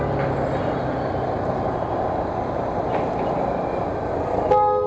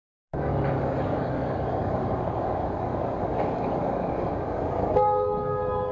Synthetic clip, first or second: second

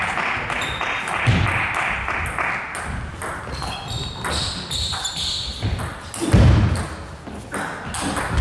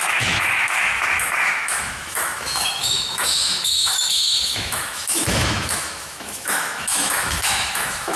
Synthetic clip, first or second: second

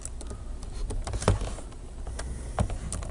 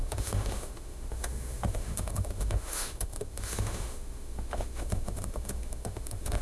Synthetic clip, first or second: second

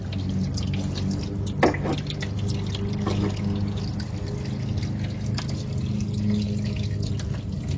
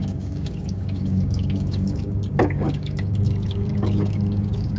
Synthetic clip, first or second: second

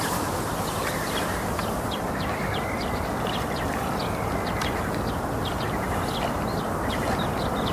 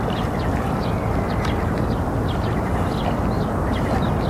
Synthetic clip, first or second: first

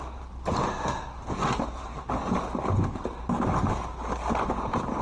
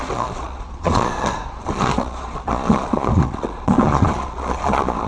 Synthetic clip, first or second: second